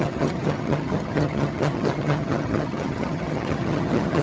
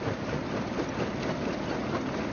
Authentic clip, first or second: second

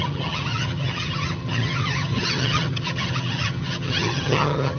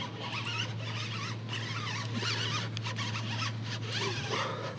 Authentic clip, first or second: second